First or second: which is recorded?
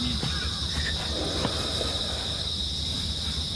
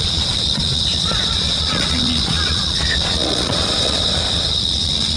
first